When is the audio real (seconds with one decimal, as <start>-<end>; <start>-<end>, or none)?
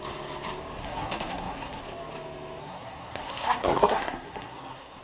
0.0-0.8; 1.8-2.6